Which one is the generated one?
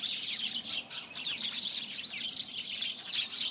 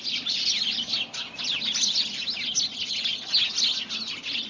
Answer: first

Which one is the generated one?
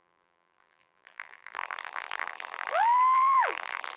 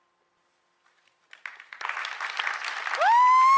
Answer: first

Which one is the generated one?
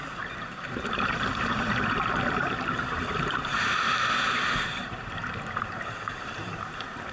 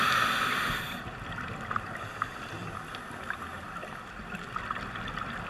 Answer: first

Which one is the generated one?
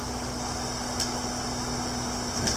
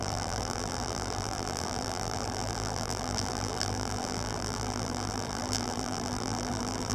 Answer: second